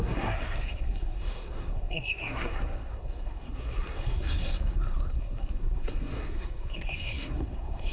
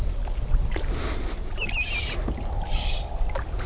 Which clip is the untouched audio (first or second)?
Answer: second